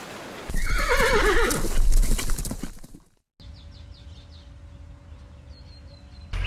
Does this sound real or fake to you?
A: real